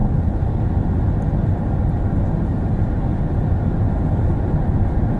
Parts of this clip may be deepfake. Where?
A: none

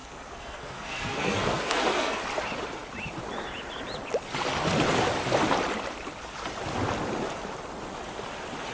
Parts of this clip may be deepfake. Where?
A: 0.0-2.2

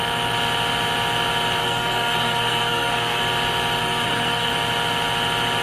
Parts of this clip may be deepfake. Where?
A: 1.6-3.2; 3.8-4.5